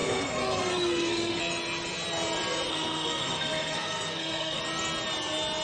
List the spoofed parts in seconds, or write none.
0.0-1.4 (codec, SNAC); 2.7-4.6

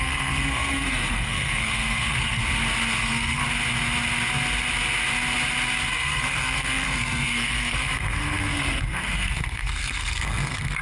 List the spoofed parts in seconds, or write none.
0.0-2.4 (codec, SNAC); 3.0-3.4; 5.9-10.8